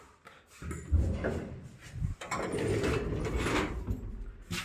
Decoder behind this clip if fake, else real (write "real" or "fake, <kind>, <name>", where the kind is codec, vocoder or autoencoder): real